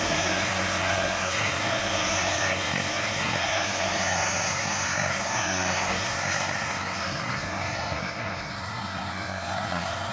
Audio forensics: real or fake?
fake